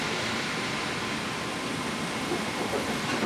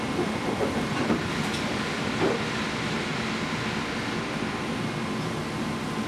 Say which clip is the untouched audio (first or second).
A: second